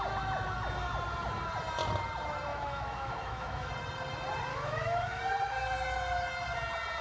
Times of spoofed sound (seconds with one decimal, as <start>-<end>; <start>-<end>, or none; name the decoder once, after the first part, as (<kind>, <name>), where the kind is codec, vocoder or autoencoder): 2.5-3.7 (autoencoder, DAC-VAE); 4.5-5.2